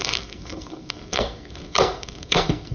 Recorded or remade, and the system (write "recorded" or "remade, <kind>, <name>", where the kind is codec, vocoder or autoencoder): remade, codec, SNAC